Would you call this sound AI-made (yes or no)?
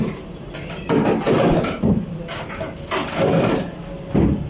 no